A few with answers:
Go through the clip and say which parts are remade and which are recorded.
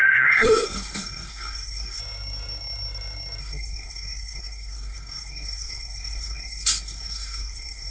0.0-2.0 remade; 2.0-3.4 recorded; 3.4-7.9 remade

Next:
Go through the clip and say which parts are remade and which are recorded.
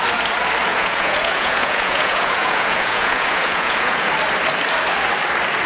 0.0-0.7 recorded; 0.7-4.1 remade; 4.1-5.7 recorded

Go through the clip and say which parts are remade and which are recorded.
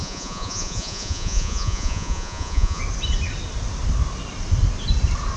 0.0-2.8 remade; 2.8-5.4 recorded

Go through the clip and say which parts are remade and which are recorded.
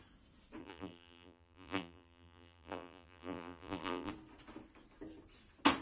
0.0-0.6 recorded; 0.6-4.1 remade; 4.1-5.8 recorded